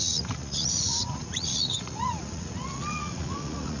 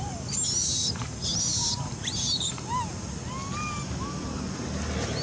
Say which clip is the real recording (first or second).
second